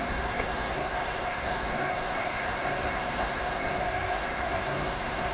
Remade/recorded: remade